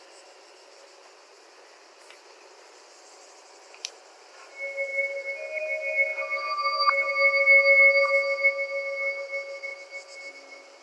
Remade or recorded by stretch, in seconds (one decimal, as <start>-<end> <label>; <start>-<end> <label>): 0.0-10.8 recorded